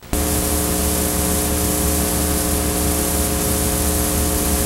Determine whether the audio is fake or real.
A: real